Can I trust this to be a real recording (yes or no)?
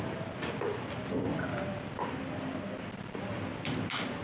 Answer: yes